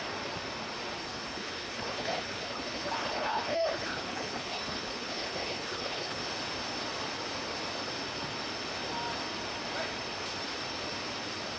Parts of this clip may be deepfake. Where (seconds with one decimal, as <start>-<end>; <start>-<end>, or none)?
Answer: 1.0-6.2